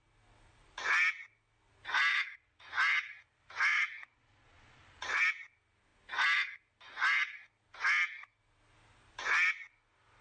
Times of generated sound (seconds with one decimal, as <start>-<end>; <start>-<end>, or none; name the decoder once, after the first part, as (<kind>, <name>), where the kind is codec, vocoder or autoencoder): 2.1-2.7 (vocoder, Vocos); 3.7-5.2

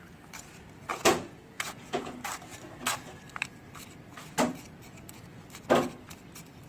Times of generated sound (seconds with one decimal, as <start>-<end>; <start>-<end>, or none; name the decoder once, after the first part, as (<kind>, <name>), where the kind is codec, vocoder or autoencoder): 0.9-2.1 (vocoder, Vocos)

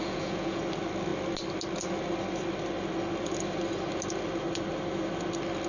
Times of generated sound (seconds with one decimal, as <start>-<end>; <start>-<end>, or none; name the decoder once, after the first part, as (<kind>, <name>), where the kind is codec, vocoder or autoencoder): 0.0-0.6 (vocoder, Vocos)

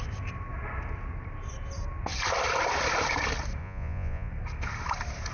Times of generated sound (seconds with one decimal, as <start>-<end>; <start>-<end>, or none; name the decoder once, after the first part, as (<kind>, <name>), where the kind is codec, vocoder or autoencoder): 3.6-4.3 (vocoder, Vocos)

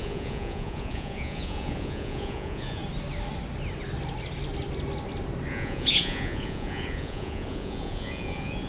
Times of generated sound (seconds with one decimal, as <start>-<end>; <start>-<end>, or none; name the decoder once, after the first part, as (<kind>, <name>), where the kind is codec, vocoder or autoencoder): 0.0-2.8 (vocoder, Vocos); 5.5-8.7